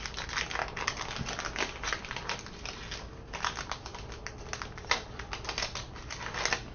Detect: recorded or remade recorded